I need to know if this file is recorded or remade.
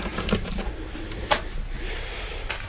recorded